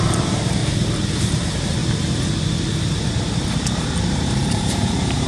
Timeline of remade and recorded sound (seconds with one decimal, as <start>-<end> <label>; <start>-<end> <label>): 0.0-0.6 remade; 0.6-1.2 recorded; 1.2-1.8 remade; 1.8-4.0 recorded; 4.0-5.3 remade